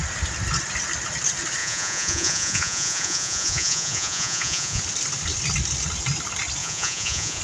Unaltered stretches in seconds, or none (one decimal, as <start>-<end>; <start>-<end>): 0.0-1.6; 4.8-6.6